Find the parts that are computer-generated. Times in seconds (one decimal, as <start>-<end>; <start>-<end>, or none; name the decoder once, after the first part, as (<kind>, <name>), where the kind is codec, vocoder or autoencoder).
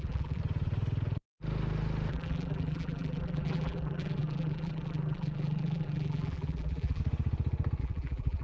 0.0-0.4 (vocoder, BigVGAN v2); 2.1-7.0; 7.8-8.4